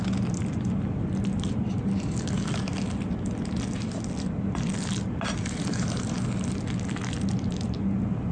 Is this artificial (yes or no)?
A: no